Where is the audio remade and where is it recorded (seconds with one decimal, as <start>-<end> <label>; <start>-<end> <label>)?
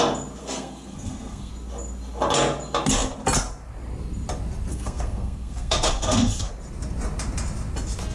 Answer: 0.0-0.4 recorded; 0.4-1.5 remade; 1.5-4.7 recorded; 4.7-6.5 remade; 6.5-8.1 recorded